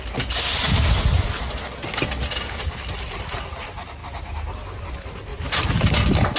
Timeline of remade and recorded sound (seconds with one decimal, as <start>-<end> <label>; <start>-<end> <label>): 0.0-6.4 recorded